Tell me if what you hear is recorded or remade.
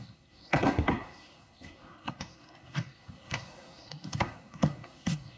remade